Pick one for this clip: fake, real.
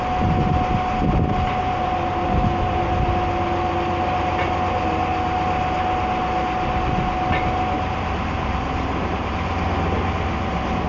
real